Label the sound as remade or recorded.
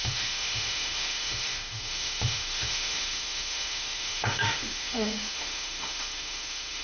remade